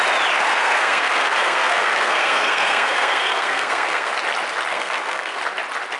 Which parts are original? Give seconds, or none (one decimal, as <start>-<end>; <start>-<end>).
0.0-0.5; 4.1-4.7; 5.4-6.0